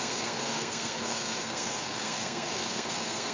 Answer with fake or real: fake